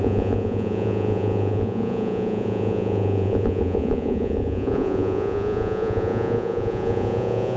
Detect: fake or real fake